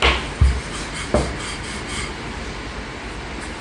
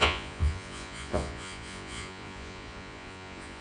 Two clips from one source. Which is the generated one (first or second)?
second